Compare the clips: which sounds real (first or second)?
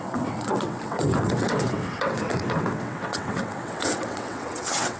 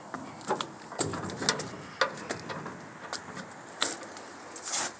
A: second